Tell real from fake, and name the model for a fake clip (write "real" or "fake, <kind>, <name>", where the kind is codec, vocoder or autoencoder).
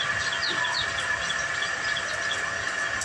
real